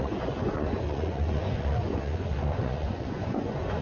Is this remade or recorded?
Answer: remade